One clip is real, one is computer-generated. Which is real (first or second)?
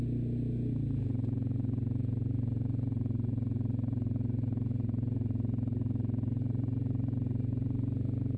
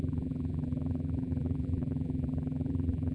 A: first